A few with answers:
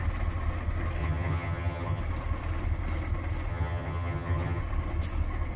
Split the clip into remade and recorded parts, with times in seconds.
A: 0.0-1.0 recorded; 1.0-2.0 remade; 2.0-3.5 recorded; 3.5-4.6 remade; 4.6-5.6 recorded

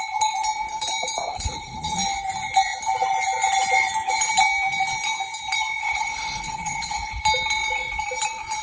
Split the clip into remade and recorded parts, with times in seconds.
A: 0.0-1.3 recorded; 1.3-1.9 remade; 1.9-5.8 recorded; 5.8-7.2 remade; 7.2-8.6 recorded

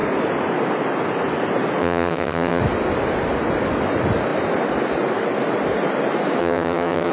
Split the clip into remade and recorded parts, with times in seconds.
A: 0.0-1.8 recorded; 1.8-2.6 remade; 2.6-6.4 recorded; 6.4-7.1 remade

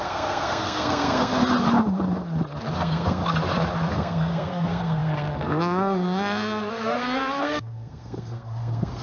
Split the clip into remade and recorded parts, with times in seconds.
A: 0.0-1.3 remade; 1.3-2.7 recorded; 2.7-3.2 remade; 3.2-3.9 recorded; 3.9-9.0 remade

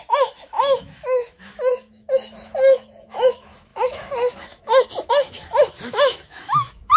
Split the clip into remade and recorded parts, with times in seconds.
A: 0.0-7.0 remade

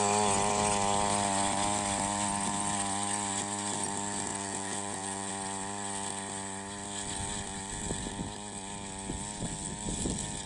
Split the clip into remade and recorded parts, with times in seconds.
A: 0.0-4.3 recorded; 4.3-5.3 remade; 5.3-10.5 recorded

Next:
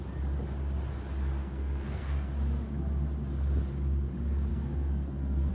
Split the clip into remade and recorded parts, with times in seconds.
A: 0.0-1.4 recorded; 1.4-2.3 remade; 2.3-4.5 recorded; 4.5-5.5 remade

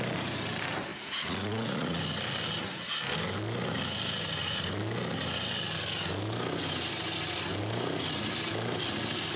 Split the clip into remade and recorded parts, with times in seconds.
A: 0.0-0.9 recorded; 0.9-2.0 remade; 2.0-9.4 recorded